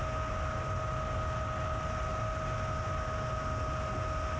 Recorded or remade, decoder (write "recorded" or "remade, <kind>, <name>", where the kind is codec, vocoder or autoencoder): recorded